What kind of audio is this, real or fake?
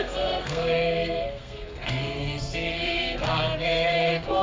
fake